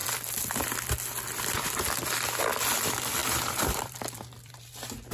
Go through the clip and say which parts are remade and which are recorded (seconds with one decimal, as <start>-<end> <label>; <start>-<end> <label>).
0.0-3.2 recorded; 3.2-4.5 remade; 4.5-5.1 recorded